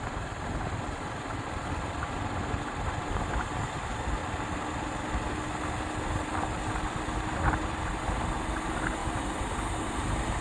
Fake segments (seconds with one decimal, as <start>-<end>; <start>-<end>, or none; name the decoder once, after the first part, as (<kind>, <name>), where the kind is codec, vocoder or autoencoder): none